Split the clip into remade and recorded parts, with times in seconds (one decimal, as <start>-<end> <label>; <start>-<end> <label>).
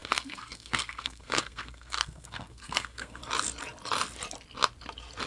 0.0-3.2 remade; 3.2-5.3 recorded